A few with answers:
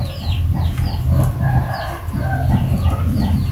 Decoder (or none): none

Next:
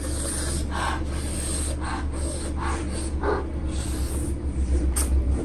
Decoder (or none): none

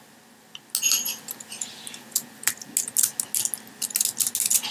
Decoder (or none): none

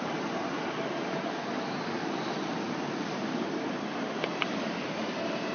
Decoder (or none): vocoder, BigVGAN v2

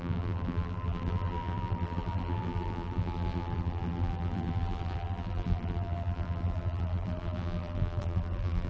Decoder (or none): vocoder, BigVGAN v2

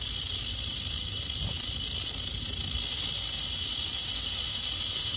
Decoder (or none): none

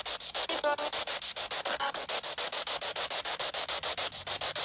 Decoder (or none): none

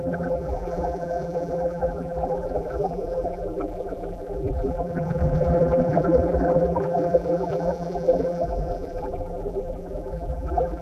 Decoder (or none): vocoder, BigVGAN v2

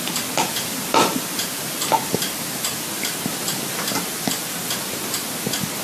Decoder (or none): none